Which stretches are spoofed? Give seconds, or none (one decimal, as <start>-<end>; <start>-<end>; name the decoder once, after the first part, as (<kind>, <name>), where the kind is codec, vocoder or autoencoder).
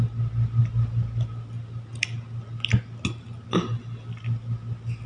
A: none